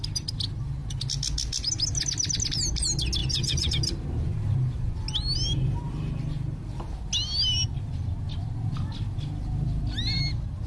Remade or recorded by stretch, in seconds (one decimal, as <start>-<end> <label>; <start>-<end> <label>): 0.0-3.2 recorded; 3.2-3.7 remade; 3.7-10.7 recorded